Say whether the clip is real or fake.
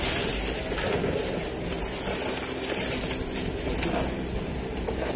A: real